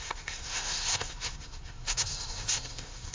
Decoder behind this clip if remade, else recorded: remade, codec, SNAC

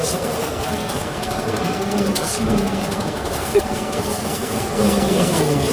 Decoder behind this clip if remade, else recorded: remade, codec, SNAC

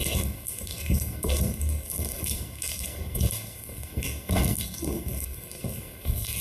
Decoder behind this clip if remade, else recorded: remade, codec, SNAC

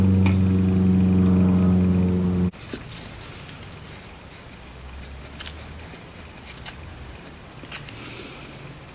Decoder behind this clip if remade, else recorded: recorded